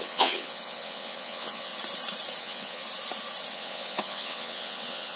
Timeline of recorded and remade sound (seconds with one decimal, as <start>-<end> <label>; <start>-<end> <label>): 0.0-1.7 remade; 1.7-2.4 recorded; 2.4-2.8 remade; 2.8-3.5 recorded; 3.5-5.2 remade